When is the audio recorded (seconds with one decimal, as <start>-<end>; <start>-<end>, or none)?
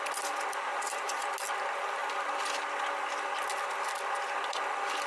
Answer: 0.0-0.7; 1.3-5.1